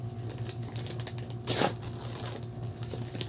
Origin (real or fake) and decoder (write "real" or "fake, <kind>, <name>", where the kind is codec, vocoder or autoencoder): real